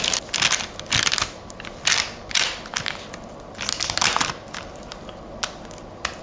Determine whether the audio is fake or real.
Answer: real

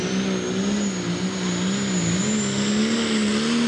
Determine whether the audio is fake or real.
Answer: real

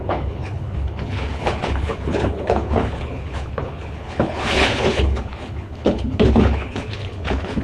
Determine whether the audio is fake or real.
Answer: fake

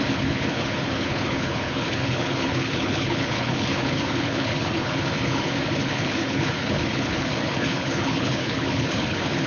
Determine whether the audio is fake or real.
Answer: fake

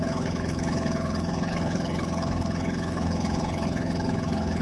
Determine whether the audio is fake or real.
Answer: fake